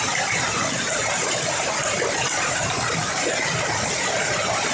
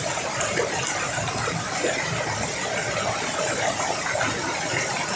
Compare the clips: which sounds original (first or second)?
second